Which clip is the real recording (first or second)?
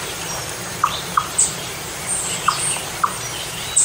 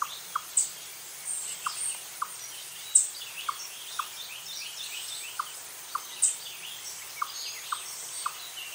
second